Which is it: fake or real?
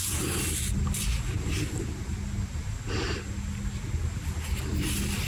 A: real